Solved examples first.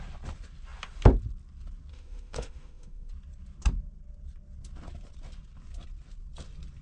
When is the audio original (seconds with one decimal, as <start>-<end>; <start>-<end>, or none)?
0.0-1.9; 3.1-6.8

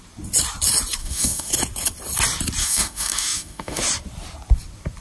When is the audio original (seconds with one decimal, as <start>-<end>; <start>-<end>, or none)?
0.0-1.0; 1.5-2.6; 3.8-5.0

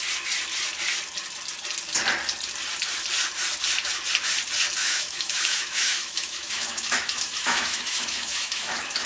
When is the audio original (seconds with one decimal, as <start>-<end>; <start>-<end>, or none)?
0.0-4.8

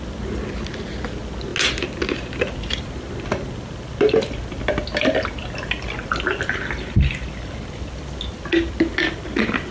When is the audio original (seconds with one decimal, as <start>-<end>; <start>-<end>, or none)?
0.0-9.7